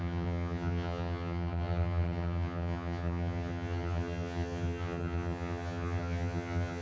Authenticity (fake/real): fake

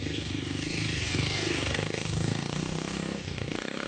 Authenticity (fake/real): fake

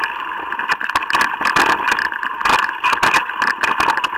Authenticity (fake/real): real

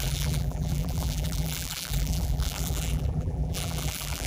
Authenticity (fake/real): fake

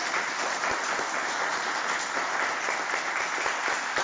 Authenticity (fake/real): real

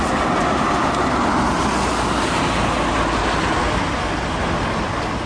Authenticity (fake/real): real